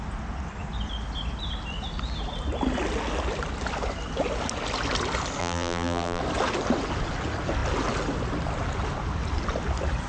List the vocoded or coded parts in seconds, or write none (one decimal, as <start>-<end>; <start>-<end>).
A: 5.4-6.2

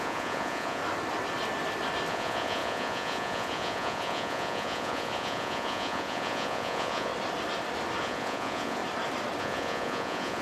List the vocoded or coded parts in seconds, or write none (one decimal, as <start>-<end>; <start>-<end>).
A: 0.0-0.8; 2.1-7.1; 8.0-8.8; 9.4-10.4

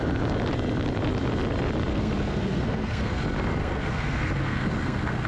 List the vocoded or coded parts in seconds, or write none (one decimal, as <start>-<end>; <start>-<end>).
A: 1.9-3.2; 3.6-5.3

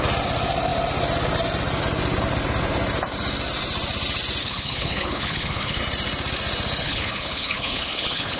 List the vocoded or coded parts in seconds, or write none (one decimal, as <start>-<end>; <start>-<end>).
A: 4.4-5.8; 6.8-8.4

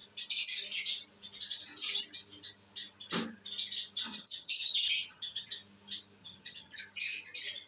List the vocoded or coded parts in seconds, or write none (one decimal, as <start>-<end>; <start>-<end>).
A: 4.1-5.5; 6.2-6.8